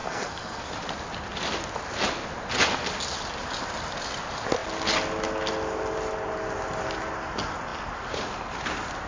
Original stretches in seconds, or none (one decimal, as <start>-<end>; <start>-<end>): 0.6-9.1